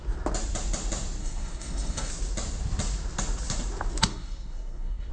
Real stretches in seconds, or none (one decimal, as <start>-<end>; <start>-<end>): 0.0-1.2; 2.1-4.1